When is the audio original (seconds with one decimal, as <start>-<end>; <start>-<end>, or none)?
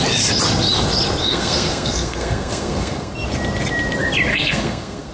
0.0-1.2; 3.1-4.3